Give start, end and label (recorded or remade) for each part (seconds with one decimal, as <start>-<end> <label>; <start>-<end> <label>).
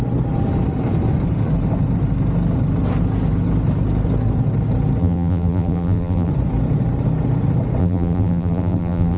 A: 0.0-5.0 recorded; 5.0-6.3 remade; 6.3-7.8 recorded; 7.8-9.2 remade